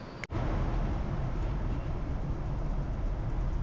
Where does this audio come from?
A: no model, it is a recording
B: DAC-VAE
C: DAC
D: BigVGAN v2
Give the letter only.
A